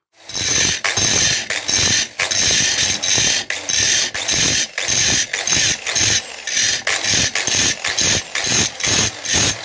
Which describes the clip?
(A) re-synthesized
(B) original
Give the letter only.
B